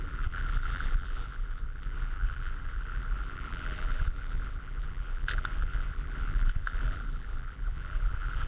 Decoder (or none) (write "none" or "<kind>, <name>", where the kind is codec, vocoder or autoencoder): vocoder, BigVGAN v2